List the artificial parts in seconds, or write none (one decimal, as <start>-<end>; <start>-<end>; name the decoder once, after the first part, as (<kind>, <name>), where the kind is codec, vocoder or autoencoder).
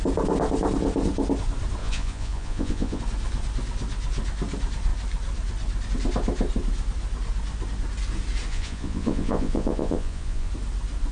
1.8-3.0 (vocoder, Vocos); 8.5-10.5